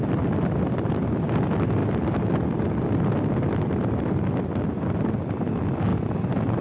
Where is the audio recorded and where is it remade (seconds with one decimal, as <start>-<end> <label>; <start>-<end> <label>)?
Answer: 0.0-6.6 recorded